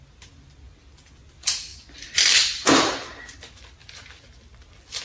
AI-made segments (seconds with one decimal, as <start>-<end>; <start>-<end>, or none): 1.7-5.0